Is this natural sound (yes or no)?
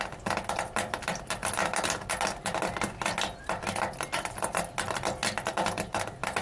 yes